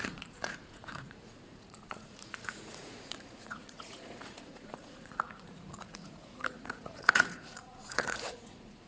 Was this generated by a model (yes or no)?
yes